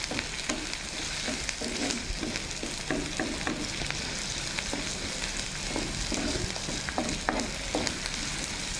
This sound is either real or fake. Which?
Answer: real